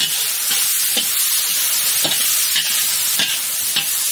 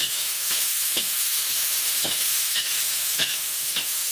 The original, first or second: first